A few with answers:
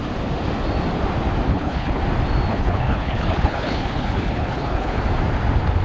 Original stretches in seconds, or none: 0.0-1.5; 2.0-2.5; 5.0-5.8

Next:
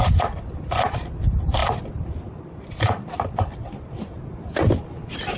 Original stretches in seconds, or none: 0.0-5.4